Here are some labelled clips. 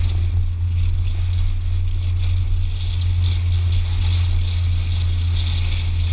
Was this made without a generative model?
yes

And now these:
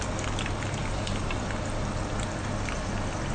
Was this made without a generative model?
yes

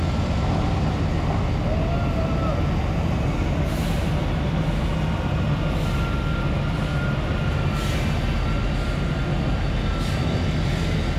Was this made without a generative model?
yes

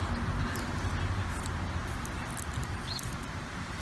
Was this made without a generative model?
yes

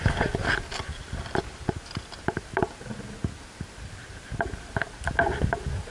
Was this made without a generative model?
yes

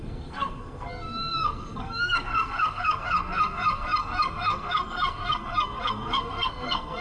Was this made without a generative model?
no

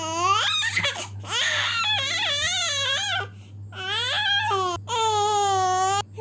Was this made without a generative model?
yes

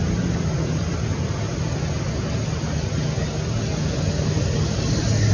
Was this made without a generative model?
yes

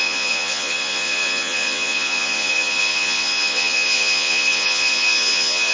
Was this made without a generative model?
no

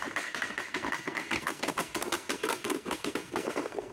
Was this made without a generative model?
no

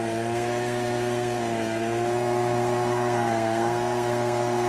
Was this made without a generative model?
no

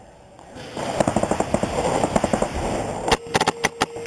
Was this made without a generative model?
yes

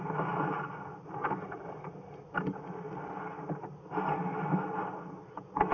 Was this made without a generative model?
yes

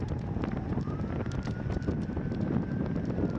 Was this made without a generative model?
yes